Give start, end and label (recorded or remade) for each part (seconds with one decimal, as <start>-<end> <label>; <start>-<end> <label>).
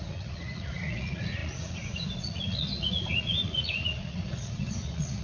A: 0.0-5.2 remade